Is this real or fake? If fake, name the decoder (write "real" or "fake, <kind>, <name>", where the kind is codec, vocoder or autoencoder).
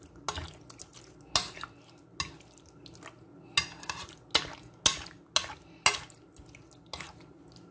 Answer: real